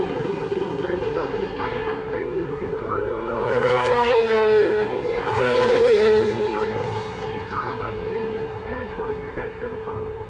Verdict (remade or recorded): remade